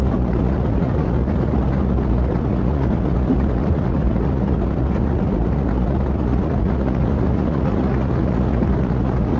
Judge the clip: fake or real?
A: fake